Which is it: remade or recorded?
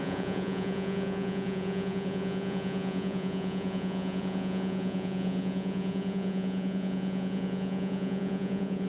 remade